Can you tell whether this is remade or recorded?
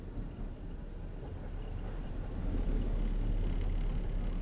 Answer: recorded